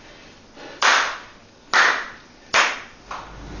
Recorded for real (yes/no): yes